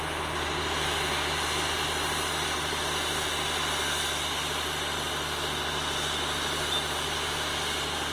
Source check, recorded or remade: recorded